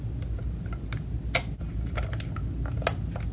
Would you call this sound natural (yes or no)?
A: yes